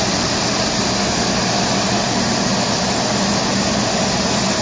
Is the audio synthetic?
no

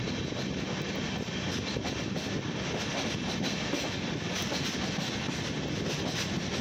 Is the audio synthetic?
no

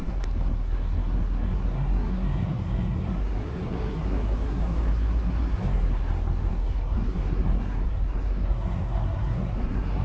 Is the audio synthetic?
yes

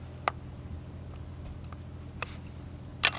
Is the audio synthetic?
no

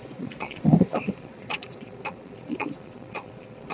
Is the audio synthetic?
yes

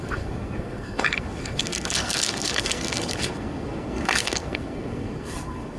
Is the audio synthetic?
yes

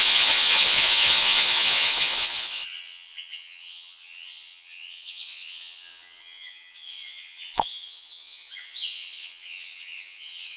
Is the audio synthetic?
yes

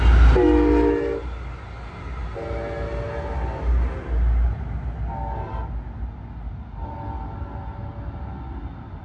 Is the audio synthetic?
no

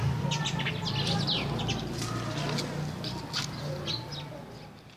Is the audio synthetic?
no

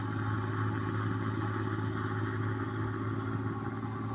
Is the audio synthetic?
no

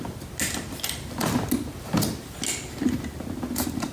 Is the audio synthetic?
no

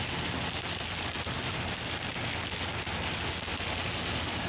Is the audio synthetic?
no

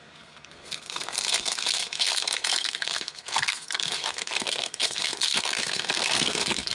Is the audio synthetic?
yes